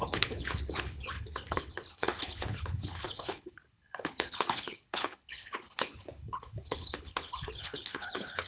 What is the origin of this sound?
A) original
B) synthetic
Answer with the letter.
B